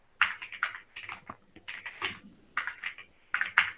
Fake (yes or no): no